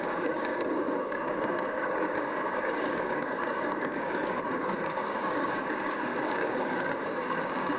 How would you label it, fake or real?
fake